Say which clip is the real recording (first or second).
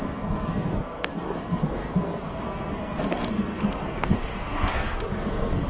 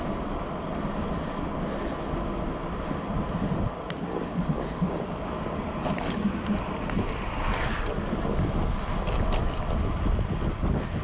second